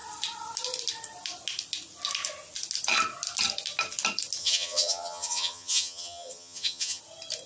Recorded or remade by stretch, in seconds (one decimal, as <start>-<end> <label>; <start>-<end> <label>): 0.0-4.4 recorded; 4.4-7.0 remade; 7.0-7.5 recorded